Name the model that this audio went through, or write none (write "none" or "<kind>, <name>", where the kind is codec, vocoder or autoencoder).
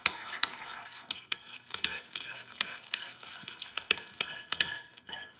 codec, SNAC